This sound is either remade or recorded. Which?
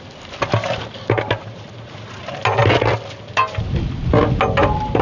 recorded